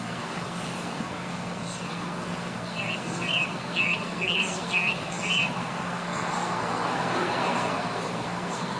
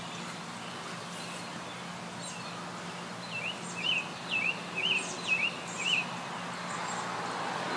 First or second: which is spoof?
first